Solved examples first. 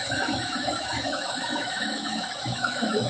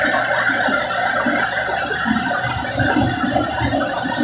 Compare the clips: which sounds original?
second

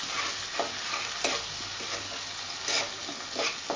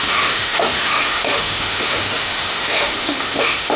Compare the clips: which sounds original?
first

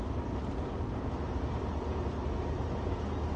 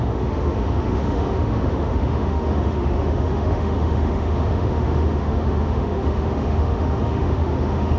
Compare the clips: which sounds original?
first